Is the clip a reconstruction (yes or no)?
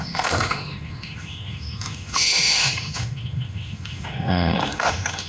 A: yes